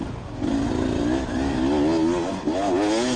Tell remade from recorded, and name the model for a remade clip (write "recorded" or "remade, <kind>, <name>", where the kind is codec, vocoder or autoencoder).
recorded